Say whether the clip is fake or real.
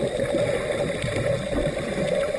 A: real